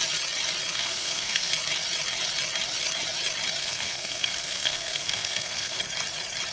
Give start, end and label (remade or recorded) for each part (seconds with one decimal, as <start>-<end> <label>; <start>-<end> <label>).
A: 0.0-0.7 recorded; 0.7-1.5 remade; 1.5-3.6 recorded; 3.6-5.8 remade; 5.8-6.5 recorded